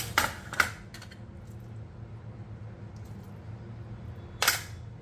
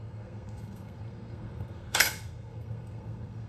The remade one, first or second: second